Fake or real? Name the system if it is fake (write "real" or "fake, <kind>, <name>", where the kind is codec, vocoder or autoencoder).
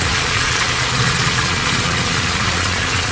fake, vocoder, Vocos